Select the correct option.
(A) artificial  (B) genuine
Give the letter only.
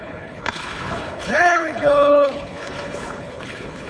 A